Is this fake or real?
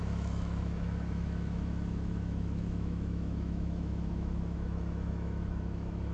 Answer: fake